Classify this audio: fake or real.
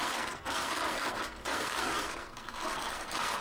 fake